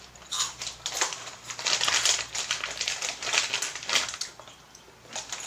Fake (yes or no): no